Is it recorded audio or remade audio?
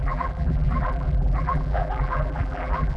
remade